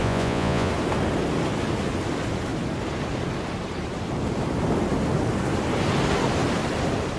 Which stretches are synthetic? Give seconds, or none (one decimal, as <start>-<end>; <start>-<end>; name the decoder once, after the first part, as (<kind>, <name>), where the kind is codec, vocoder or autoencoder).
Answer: 0.0-0.7 (vocoder, Vocos)